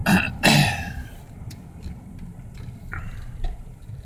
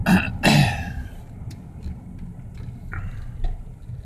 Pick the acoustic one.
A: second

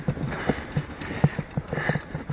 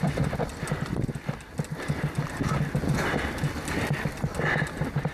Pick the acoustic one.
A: second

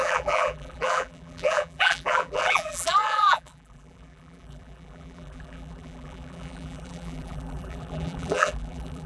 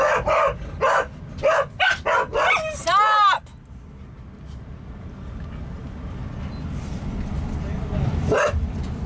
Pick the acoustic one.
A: second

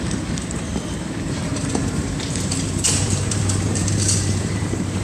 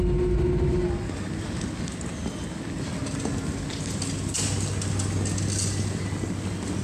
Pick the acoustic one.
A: second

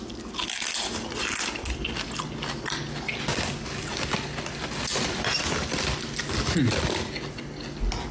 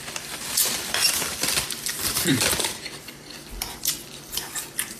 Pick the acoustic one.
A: first